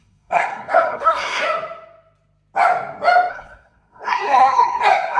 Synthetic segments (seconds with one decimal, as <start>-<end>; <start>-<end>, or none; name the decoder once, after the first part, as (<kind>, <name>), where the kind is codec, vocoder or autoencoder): 0.0-1.4 (codec, SNAC); 3.3-5.2